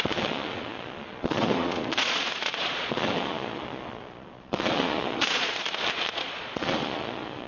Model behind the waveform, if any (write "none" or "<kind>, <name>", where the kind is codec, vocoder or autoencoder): vocoder, Vocos